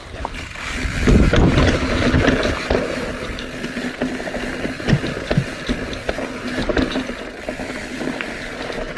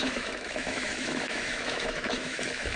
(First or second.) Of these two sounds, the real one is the first